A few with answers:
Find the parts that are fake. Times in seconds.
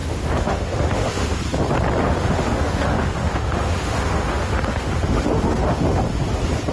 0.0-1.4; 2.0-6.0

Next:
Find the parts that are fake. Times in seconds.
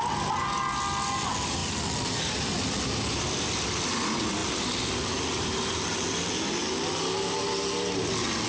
none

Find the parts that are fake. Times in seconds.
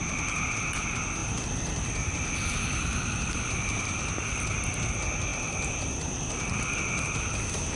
1.2-4.6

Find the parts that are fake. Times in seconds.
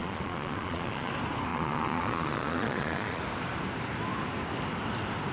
0.0-1.1; 1.5-3.2